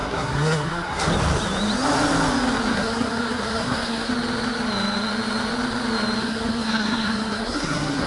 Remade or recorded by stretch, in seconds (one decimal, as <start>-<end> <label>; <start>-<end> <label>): 0.0-1.1 remade; 1.1-2.7 recorded; 2.7-4.1 remade; 4.1-6.2 recorded; 6.2-8.1 remade